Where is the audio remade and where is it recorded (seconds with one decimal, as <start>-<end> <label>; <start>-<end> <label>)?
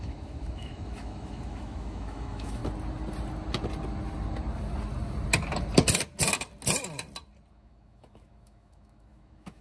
0.0-2.6 remade; 2.6-7.5 recorded; 7.5-9.6 remade